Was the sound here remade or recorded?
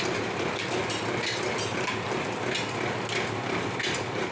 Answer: recorded